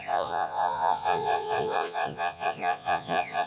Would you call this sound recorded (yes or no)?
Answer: no